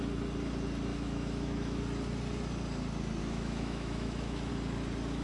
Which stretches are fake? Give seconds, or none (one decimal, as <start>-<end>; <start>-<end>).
0.9-1.8; 3.2-4.5